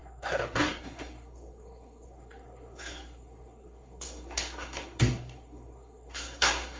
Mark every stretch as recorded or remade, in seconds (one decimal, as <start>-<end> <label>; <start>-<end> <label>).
0.0-6.8 remade